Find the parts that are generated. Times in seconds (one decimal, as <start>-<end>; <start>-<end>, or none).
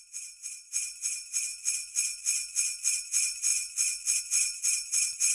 0.0-1.5; 3.0-3.5; 4.2-5.3